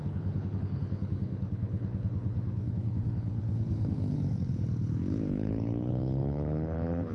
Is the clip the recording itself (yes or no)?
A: no